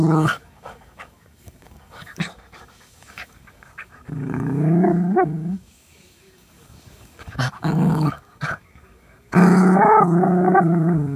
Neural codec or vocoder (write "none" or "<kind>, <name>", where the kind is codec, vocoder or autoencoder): codec, DAC